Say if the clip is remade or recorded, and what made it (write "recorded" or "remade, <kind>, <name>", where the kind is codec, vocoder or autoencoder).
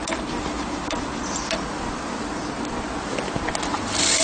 recorded